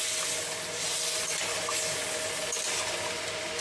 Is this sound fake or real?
real